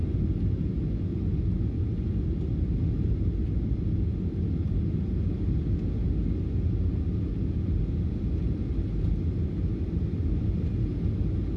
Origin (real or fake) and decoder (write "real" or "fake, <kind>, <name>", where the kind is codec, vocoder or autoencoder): real